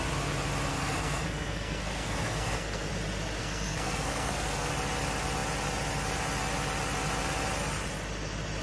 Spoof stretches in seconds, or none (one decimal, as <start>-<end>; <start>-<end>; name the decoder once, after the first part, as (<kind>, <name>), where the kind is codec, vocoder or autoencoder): 0.7-2.9 (codec, SNAC); 3.4-4.7